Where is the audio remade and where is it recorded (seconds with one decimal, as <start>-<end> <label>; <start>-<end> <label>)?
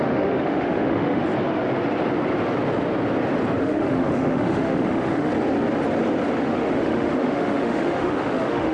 0.0-1.2 remade; 1.2-3.6 recorded; 3.6-5.3 remade; 5.3-6.4 recorded; 6.4-8.7 remade